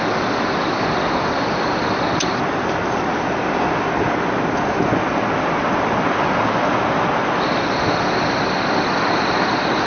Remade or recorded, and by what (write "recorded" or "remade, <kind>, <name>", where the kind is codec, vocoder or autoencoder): recorded